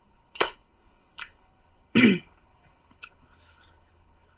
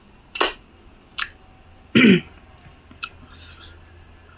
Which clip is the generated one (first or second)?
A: first